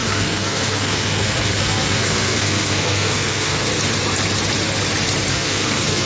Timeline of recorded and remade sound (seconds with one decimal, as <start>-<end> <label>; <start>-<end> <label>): 0.0-3.7 remade; 3.7-5.3 recorded; 5.3-6.1 remade